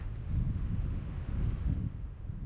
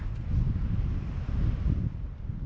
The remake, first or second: first